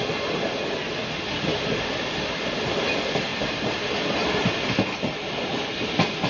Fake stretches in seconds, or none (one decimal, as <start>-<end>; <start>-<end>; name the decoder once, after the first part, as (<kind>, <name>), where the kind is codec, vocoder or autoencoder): none